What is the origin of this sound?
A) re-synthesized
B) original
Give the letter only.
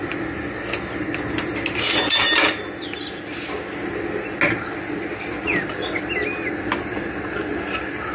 B